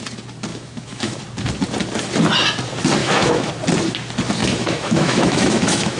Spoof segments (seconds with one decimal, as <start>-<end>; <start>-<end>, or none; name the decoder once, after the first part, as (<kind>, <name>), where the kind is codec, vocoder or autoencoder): 0.5-1.2 (autoencoder, DAC-VAE); 3.0-3.5; 4.4-6.0

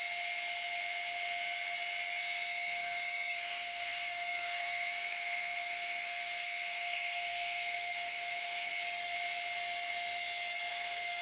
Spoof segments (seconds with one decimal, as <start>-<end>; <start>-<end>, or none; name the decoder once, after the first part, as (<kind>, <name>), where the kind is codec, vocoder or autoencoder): 2.2-8.7 (codec, SNAC); 10.7-11.2

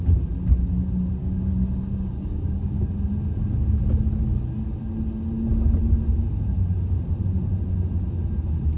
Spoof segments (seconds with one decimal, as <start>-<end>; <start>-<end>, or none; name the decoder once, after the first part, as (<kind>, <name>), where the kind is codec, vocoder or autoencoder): 1.2-3.0 (codec, DAC)

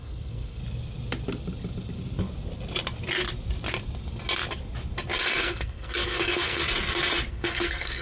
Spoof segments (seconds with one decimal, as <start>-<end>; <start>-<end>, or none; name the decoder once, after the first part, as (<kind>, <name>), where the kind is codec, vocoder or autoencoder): 0.0-0.6 (codec, SNAC); 5.4-6.6; 7.3-8.0

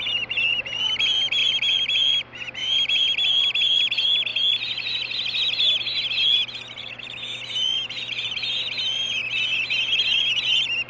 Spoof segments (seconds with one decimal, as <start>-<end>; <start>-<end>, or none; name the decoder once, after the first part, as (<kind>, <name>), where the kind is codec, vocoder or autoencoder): 0.0-1.4 (vocoder, BigVGAN v2); 2.6-4.3; 8.0-9.2; 10.3-10.9

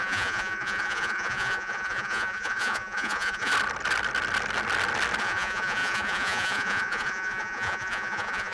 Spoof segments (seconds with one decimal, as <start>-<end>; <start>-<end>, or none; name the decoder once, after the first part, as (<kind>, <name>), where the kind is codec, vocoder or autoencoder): 0.0-3.5 (vocoder, Vocos); 5.2-8.5